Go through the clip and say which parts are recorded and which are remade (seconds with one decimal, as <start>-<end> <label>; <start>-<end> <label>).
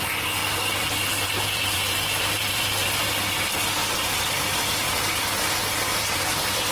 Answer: 0.0-0.4 recorded; 0.4-3.1 remade; 3.1-3.8 recorded; 3.8-5.0 remade; 5.0-5.9 recorded; 5.9-6.7 remade